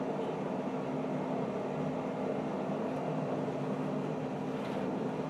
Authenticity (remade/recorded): recorded